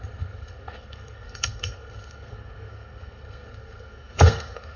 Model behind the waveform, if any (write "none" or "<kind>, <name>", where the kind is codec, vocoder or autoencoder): codec, SNAC